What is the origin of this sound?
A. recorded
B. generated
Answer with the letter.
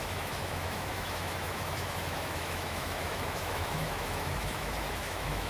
B